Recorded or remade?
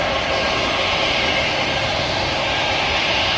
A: remade